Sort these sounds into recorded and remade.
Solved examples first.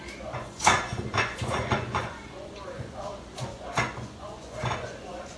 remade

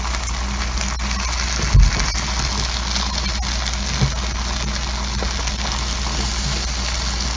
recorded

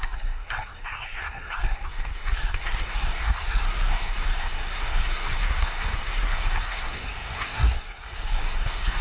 remade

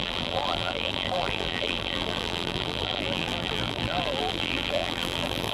remade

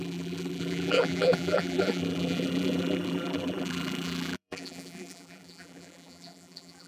remade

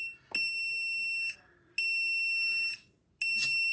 recorded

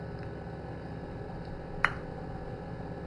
recorded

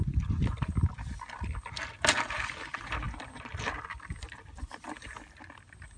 recorded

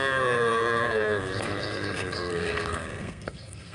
remade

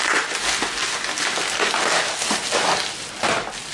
recorded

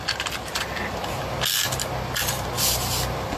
recorded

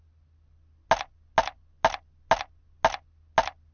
recorded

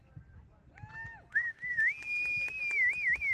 recorded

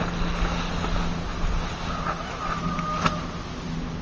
recorded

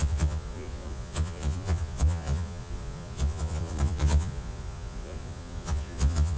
remade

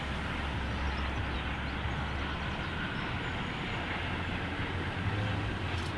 recorded